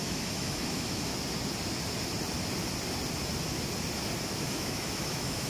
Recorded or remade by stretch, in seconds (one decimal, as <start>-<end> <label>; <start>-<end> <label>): 0.0-1.1 remade; 1.1-4.4 recorded; 4.4-5.5 remade